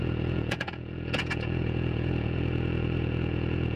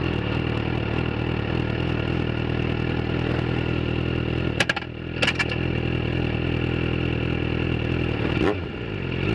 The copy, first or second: first